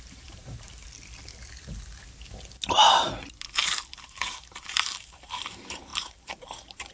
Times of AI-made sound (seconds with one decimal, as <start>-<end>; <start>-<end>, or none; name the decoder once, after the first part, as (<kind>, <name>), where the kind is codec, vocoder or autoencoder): 0.0-0.8 (vocoder, BigVGAN v2); 3.9-6.9